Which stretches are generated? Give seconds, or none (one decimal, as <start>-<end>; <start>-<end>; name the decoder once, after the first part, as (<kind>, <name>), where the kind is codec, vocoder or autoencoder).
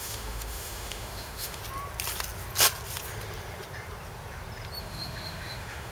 0.0-1.6 (autoencoder, DAC-VAE); 4.8-5.9